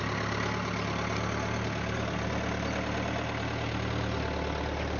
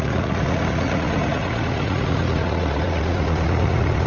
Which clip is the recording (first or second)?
first